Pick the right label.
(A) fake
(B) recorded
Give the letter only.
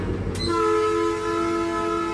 B